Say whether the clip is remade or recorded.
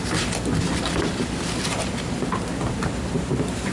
recorded